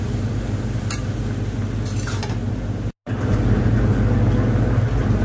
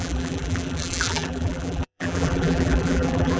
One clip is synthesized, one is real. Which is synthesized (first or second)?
second